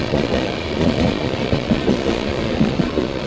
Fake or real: fake